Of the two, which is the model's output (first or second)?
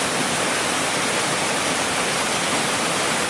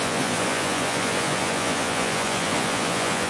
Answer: second